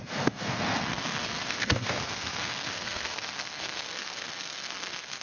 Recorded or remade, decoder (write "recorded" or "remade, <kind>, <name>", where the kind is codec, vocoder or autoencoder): remade, codec, SNAC